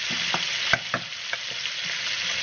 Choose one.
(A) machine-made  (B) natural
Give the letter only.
B